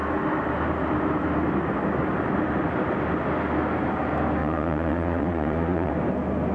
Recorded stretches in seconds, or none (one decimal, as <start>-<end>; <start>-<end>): 0.0-4.4; 5.9-6.5